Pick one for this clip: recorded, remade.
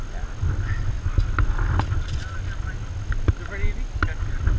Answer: recorded